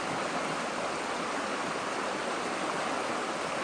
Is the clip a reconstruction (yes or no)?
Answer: no